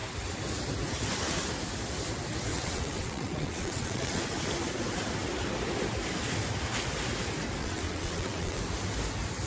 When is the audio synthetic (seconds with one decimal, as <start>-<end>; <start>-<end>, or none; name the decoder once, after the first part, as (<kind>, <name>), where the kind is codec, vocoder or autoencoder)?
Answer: 2.5-4.2 (vocoder, WaveNeXt); 7.6-8.6